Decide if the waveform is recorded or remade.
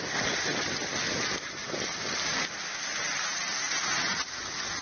recorded